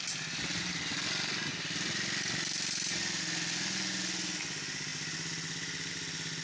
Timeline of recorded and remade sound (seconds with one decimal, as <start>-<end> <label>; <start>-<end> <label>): 0.0-6.4 recorded